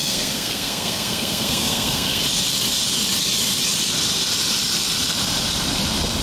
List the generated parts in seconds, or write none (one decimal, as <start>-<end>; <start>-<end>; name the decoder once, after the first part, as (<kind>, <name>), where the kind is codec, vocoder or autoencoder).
0.0-2.2 (codec, SNAC)